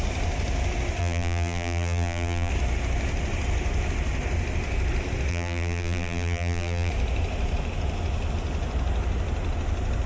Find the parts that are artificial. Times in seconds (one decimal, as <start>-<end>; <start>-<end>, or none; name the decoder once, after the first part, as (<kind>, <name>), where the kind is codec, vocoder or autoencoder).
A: 1.0-2.5 (vocoder, BigVGAN v2); 5.3-6.9